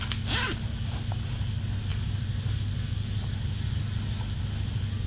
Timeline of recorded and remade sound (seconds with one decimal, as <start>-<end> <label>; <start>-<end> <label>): 0.0-5.1 recorded